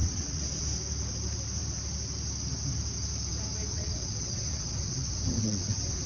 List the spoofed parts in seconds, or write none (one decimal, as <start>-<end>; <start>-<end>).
0.0-0.6; 3.7-6.1

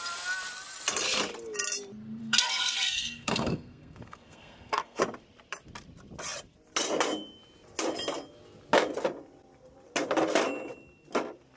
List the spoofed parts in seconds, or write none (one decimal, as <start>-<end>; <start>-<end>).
2.2-5.0

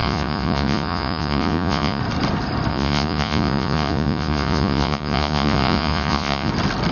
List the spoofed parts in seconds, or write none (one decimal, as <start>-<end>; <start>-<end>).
0.0-2.0; 2.7-6.5

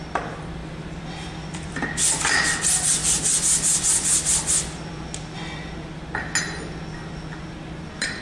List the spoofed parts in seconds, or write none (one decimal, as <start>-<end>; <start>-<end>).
none

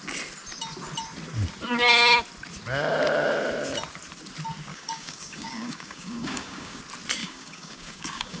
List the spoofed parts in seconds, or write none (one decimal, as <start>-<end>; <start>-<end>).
4.7-6.8; 7.2-8.4

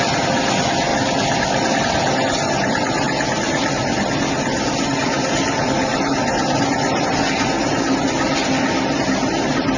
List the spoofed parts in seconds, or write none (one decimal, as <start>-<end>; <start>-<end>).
none

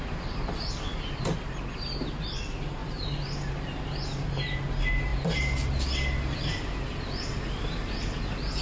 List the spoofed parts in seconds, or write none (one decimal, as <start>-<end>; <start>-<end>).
none

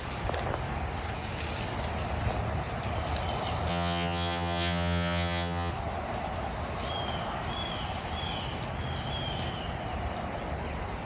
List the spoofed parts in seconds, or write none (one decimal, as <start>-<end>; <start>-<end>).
3.7-5.7